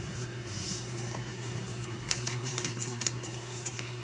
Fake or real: fake